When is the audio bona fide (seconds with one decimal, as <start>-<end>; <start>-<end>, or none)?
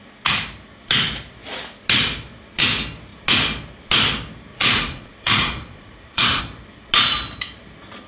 0.0-4.5; 6.4-8.1